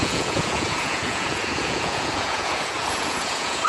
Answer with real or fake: fake